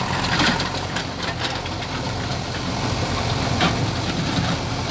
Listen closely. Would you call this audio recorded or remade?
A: remade